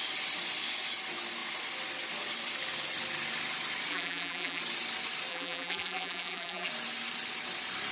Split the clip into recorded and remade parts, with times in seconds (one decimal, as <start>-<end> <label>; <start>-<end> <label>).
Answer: 0.0-3.9 recorded; 3.9-4.6 remade; 4.6-5.3 recorded; 5.3-6.7 remade; 6.7-7.9 recorded